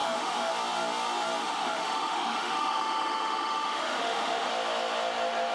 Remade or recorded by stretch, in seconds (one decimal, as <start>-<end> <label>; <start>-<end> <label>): 0.0-0.5 remade; 0.5-1.4 recorded; 1.4-4.5 remade; 4.5-5.5 recorded